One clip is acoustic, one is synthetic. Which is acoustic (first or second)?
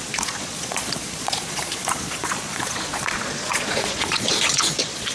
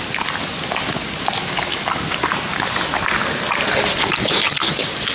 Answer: second